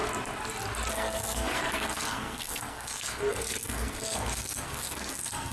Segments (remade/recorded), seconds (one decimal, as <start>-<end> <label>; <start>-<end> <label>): 0.0-0.9 recorded; 0.9-5.5 remade